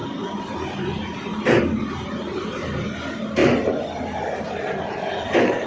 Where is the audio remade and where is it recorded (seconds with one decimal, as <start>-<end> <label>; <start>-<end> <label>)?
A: 0.0-5.7 recorded